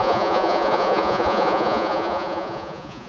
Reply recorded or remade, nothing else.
remade